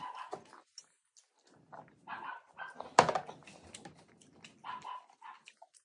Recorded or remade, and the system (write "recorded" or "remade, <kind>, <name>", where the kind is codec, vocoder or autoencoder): recorded